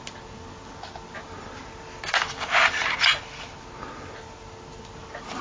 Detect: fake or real real